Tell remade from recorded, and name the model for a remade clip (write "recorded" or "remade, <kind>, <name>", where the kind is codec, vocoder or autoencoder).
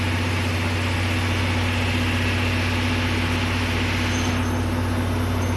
recorded